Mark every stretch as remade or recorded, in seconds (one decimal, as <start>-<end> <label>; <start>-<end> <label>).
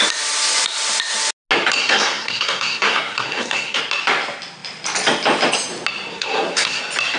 0.0-1.8 recorded; 1.8-3.8 remade; 3.8-6.1 recorded; 6.1-6.8 remade; 6.8-7.2 recorded